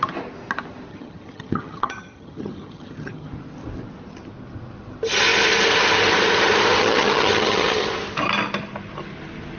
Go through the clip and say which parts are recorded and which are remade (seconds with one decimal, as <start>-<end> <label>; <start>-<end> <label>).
0.0-0.9 recorded; 0.9-3.3 remade; 3.3-6.8 recorded; 6.8-7.9 remade; 7.9-9.6 recorded